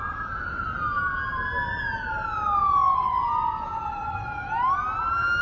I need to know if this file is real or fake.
real